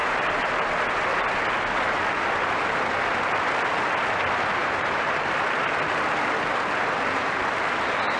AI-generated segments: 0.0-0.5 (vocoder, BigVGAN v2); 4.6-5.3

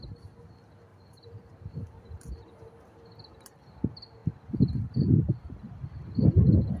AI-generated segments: 0.9-2.2 (vocoder, BigVGAN v2)

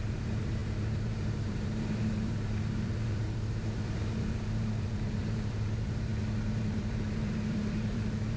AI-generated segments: 0.0-6.1 (vocoder, BigVGAN v2); 6.6-8.4

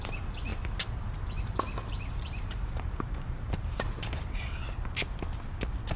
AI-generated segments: 1.8-4.0 (vocoder, BigVGAN v2)

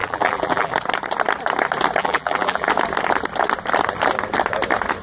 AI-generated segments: 0.0-0.7 (vocoder, BigVGAN v2); 2.0-2.7

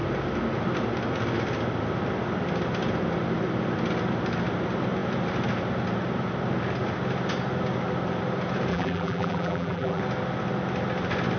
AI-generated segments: 8.7-10.0 (vocoder, BigVGAN v2)

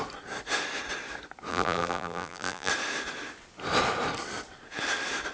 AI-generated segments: 1.5-2.7 (vocoder, BigVGAN v2)